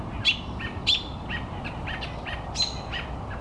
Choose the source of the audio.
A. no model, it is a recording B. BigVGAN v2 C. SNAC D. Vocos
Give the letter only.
A